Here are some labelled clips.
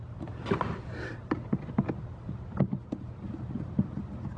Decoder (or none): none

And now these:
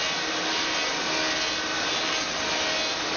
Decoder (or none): none